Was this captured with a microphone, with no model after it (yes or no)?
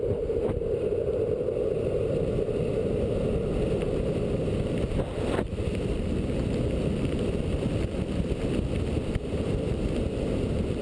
no